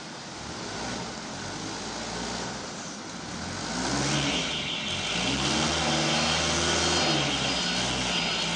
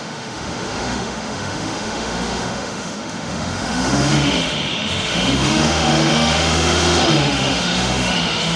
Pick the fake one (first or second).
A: second